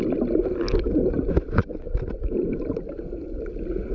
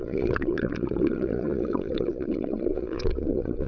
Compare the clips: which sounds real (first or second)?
first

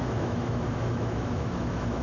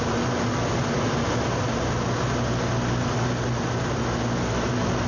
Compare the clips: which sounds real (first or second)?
second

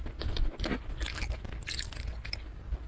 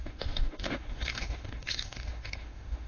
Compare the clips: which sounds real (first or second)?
first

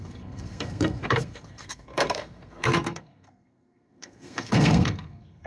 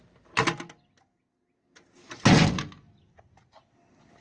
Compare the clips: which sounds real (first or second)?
second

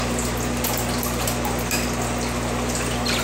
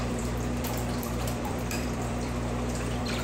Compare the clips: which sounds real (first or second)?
first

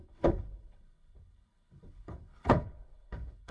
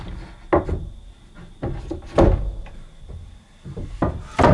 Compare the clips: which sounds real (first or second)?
second